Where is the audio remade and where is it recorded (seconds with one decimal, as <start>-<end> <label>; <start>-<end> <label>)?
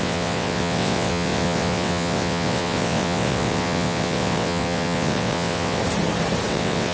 0.0-5.8 remade; 5.8-6.5 recorded; 6.5-6.9 remade